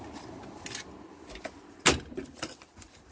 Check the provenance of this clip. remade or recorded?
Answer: recorded